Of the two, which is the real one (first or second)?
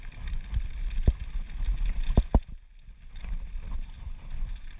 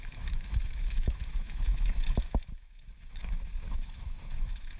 first